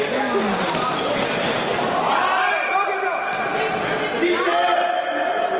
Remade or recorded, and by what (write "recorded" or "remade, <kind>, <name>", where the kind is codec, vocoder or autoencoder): recorded